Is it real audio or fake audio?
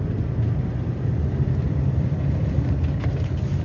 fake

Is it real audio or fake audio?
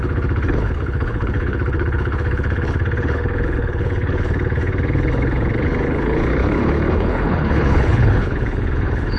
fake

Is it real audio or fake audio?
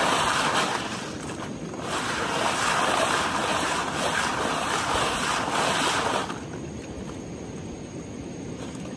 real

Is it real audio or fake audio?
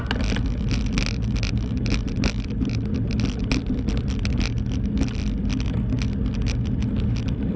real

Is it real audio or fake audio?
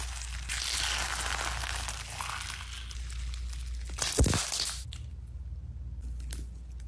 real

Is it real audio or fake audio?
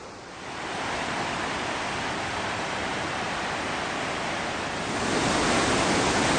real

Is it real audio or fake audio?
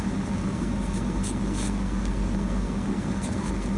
fake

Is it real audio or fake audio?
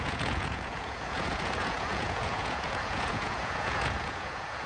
fake